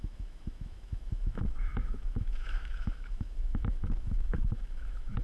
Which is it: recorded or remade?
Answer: remade